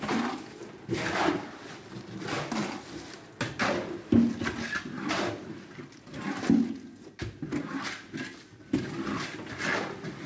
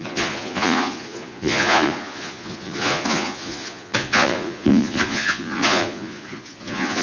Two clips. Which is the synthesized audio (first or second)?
second